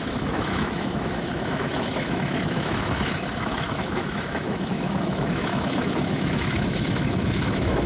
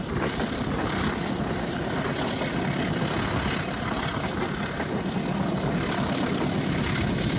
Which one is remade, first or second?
first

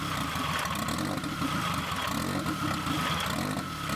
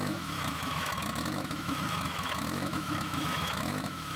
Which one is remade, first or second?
second